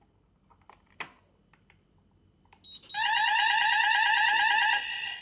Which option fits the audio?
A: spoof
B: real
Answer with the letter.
B